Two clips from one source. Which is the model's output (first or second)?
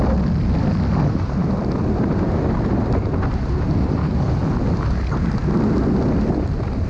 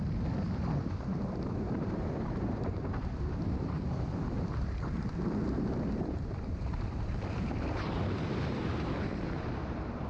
second